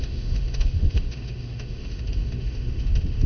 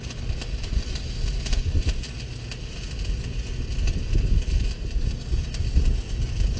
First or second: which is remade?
first